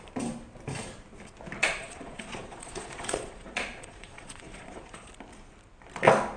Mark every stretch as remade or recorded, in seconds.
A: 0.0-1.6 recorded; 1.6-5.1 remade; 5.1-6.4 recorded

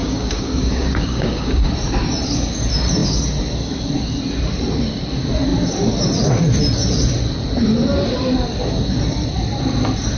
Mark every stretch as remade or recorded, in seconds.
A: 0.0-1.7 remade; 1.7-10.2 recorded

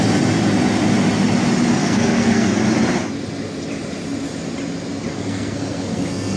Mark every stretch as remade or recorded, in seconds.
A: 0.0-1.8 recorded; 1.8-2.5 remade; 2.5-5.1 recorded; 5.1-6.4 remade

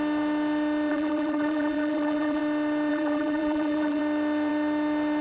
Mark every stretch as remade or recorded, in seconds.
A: 0.0-0.9 recorded; 0.9-2.4 remade; 2.4-2.9 recorded; 2.9-4.0 remade; 4.0-5.2 recorded

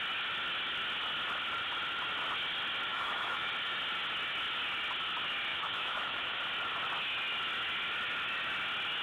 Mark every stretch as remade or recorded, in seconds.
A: 0.0-2.9 recorded; 2.9-3.5 remade; 3.5-5.5 recorded; 5.5-6.4 remade; 6.4-9.0 recorded

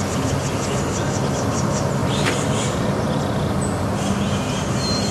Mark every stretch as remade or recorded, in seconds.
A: 0.0-5.1 recorded

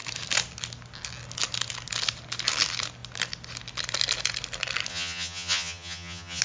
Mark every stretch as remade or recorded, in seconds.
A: 0.0-4.9 recorded; 4.9-6.4 remade